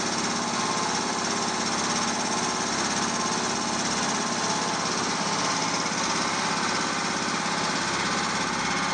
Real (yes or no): yes